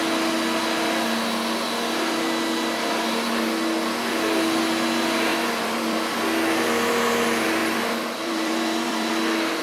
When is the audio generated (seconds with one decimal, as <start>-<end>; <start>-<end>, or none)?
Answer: 5.3-6.2; 7.6-9.1